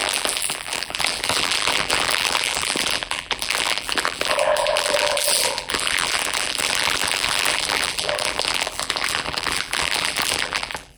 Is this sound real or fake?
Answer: fake